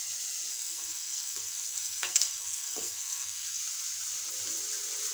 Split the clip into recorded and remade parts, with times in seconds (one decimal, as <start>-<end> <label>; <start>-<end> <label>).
0.0-0.5 recorded; 0.5-3.6 remade; 3.6-5.1 recorded